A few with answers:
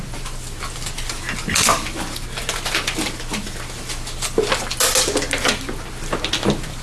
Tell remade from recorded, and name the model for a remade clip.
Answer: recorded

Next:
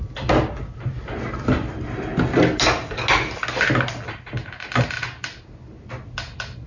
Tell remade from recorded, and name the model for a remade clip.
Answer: recorded